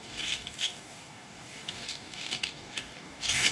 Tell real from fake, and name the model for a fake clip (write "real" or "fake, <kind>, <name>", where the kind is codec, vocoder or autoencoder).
fake, codec, DAC